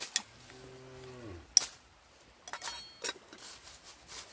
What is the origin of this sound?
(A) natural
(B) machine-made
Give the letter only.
A